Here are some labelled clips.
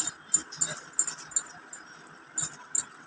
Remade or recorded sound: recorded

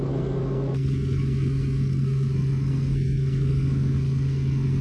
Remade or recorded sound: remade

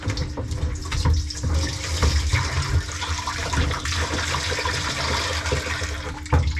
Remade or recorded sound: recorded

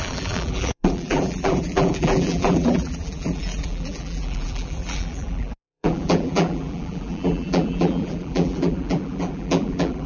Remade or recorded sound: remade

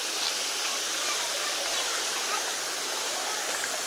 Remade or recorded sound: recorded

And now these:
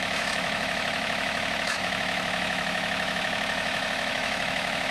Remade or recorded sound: remade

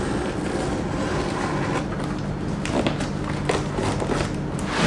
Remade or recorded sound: recorded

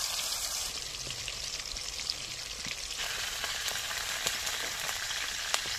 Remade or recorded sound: remade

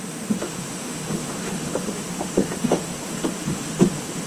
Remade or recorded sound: remade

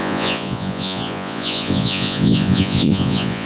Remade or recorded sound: remade